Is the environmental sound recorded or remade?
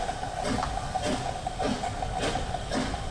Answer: recorded